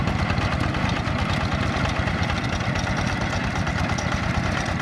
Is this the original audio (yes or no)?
yes